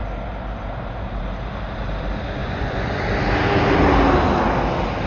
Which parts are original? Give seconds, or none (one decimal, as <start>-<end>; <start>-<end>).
0.0-2.4; 3.0-5.1